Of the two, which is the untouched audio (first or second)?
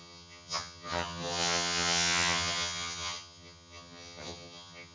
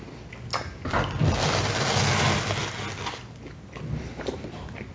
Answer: second